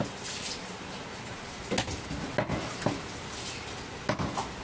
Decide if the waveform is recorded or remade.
recorded